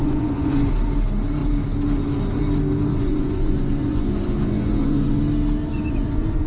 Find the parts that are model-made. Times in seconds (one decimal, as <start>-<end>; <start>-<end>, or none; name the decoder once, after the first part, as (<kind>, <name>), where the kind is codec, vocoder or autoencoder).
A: 0.0-0.7 (vocoder, Vocos); 2.9-5.2; 5.7-6.5